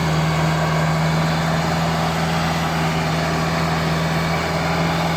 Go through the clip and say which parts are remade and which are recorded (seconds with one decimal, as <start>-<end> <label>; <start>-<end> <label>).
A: 0.0-5.2 recorded